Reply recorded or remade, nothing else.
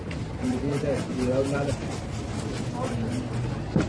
recorded